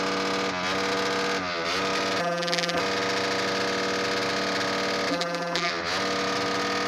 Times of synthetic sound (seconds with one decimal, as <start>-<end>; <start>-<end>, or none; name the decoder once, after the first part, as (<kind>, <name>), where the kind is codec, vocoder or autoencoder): 2.2-2.8 (vocoder, BigVGAN v2); 5.1-5.7